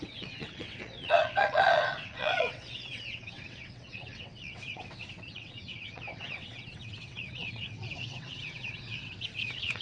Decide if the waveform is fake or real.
fake